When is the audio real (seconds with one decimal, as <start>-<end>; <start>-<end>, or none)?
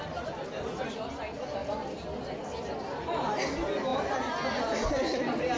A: 0.0-5.6